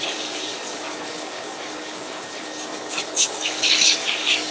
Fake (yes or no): yes